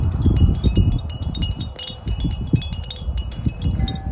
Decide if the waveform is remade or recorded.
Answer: recorded